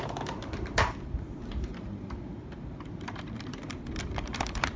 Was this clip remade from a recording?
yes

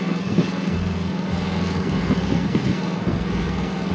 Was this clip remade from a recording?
yes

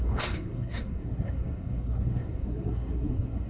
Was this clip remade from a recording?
yes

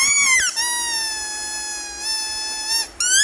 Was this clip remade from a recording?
no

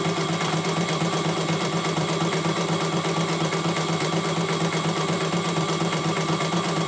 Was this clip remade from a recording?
yes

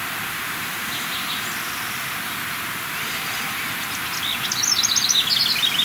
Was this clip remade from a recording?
no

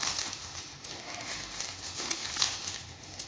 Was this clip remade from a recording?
yes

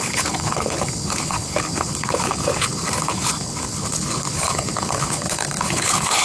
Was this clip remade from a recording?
yes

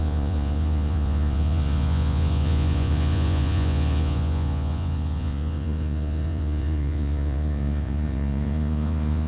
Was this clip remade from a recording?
yes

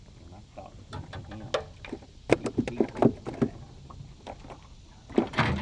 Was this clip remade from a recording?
no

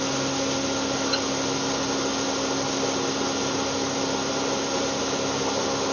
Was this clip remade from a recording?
no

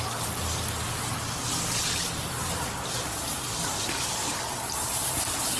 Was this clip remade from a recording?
no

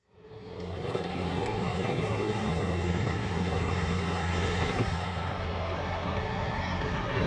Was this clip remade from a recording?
yes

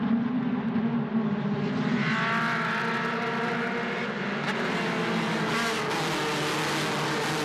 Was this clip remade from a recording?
no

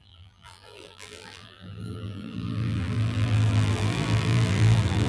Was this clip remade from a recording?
yes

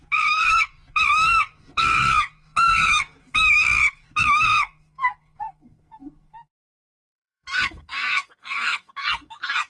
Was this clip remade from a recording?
yes